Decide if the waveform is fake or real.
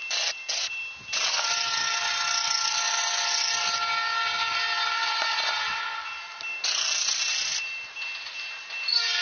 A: real